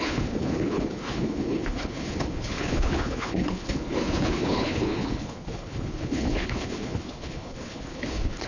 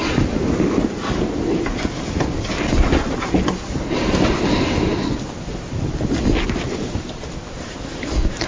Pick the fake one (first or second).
first